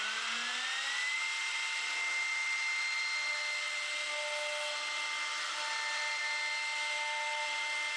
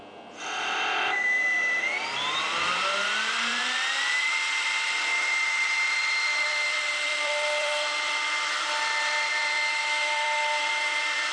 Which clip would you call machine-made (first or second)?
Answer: second